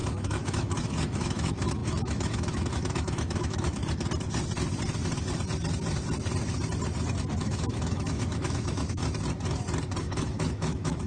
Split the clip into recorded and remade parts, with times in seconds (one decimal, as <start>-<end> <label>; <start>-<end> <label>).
0.0-3.8 remade; 3.8-7.4 recorded; 7.4-9.0 remade; 9.0-10.0 recorded; 10.0-11.1 remade